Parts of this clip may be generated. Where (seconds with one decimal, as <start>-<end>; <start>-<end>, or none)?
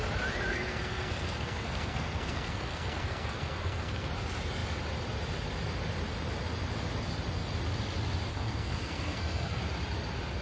0.5-4.1; 8.3-9.6